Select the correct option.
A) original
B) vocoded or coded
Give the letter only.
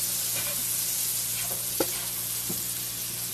A